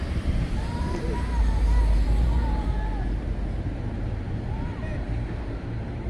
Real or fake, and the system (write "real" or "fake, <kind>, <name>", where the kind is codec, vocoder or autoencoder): fake, vocoder, BigVGAN v2